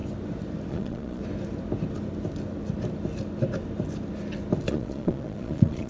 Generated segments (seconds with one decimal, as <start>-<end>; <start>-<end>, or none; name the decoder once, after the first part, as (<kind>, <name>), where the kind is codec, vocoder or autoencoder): 0.7-1.2 (vocoder, Vocos); 4.7-5.9